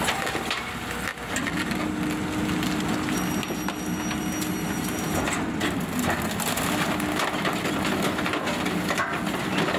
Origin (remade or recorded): recorded